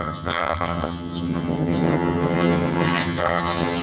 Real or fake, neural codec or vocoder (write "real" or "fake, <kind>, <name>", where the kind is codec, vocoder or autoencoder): fake, vocoder, HiFi-GAN